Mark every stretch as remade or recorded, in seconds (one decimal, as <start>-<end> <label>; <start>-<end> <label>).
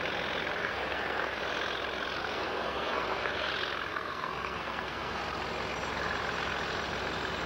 0.0-0.6 recorded; 0.6-1.4 remade; 1.4-2.2 recorded; 2.2-3.5 remade; 3.5-3.9 recorded; 3.9-5.2 remade; 5.2-7.5 recorded